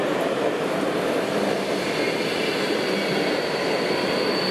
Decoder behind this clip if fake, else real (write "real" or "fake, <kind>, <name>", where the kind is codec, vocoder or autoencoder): real